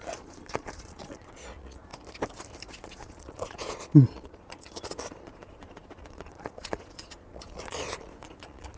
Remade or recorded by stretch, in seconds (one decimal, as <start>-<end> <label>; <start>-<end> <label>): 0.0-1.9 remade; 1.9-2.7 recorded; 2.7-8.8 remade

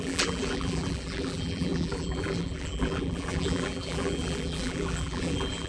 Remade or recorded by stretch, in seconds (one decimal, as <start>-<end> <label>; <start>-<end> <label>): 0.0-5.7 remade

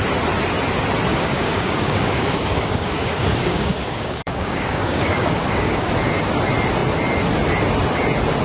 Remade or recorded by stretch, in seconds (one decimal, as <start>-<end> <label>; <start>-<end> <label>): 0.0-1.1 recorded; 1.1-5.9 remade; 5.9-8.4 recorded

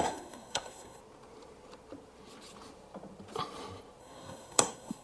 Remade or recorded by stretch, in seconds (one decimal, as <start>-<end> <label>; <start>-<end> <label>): 0.0-1.0 remade; 1.0-4.0 recorded; 4.0-5.0 remade